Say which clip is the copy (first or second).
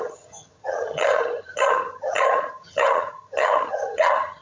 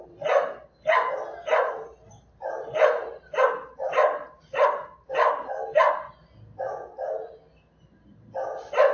first